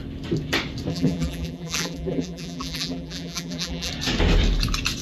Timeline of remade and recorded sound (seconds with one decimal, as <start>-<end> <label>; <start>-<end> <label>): 0.0-0.9 recorded; 0.9-3.9 remade; 3.9-5.0 recorded